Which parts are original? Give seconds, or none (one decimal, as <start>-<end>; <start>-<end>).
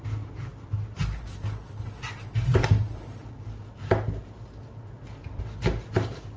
0.0-6.4